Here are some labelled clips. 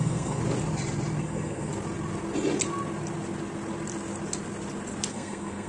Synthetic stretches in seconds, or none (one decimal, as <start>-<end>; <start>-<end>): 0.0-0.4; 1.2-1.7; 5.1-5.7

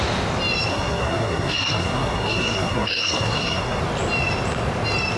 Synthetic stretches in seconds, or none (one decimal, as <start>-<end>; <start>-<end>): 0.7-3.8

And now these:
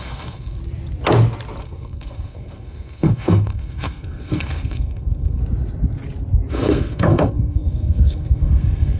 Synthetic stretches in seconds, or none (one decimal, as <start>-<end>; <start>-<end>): 0.0-0.6; 1.6-5.4; 6.5-9.0

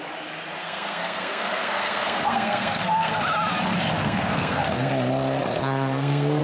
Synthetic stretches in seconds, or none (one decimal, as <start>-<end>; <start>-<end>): 0.6-3.1; 4.0-4.9; 5.6-6.4